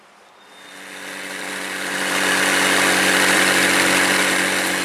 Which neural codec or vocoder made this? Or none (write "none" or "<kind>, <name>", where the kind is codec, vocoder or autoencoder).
none